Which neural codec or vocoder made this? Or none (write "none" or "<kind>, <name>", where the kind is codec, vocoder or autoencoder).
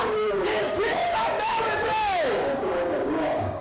codec, DAC